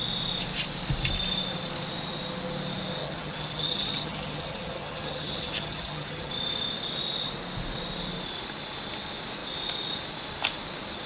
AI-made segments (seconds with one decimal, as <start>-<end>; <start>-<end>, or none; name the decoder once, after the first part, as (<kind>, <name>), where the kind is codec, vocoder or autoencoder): 3.0-6.3 (vocoder, HiFi-GAN)